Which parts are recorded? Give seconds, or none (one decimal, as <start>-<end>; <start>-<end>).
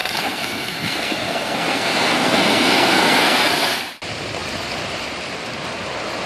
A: 3.8-6.3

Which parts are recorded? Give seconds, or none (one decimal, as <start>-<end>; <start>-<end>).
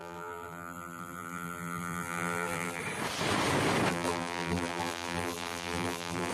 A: 2.8-3.9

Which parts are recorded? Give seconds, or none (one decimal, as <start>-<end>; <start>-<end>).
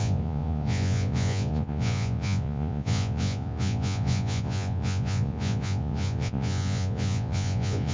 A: none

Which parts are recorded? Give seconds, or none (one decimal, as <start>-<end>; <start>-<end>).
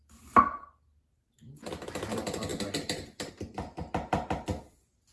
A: 0.0-5.1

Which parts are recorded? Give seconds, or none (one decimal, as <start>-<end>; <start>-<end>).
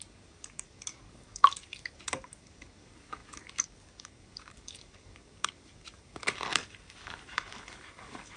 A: none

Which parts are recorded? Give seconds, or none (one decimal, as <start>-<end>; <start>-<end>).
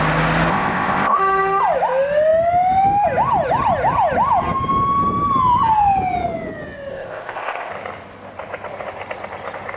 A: 0.0-0.5; 1.2-6.9; 7.7-9.8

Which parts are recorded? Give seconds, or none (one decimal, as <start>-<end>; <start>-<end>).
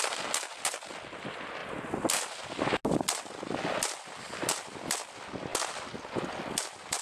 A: 0.0-7.0